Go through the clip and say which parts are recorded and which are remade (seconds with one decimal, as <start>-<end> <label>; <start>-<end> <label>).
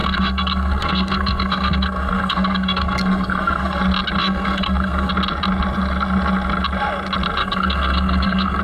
0.0-3.8 remade; 3.8-4.2 recorded; 4.2-5.1 remade; 5.1-7.4 recorded; 7.4-8.6 remade